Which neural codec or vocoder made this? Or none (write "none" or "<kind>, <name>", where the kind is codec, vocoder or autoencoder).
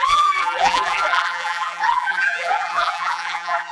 vocoder, BigVGAN v2